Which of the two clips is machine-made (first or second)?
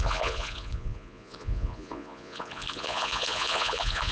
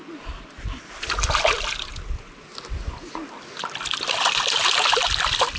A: first